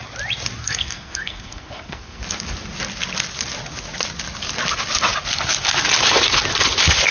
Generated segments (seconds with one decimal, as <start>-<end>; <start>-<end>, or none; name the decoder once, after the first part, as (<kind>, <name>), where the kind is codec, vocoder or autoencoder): 0.6-2.2 (codec, SNAC)